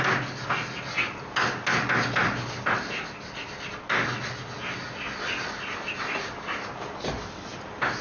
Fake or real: real